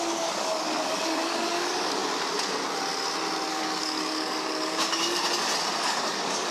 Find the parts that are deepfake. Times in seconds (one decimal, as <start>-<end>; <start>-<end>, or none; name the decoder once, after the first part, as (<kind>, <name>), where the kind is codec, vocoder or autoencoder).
0.0-2.0 (codec, DAC); 3.5-5.2; 5.8-6.5